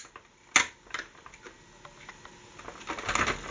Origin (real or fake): real